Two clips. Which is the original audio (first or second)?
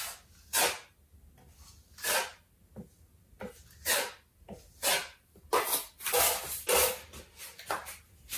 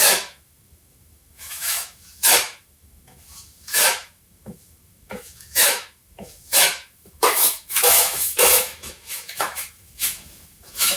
first